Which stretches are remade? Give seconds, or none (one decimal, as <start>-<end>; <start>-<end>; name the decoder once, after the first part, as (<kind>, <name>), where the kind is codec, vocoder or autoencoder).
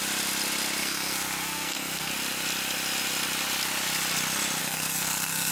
0.8-2.1 (codec, SNAC); 4.6-5.5